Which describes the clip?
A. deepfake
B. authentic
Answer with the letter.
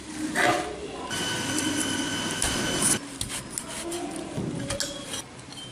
B